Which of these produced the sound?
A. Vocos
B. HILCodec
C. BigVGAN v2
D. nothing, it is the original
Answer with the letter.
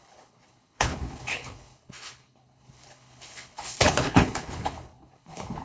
B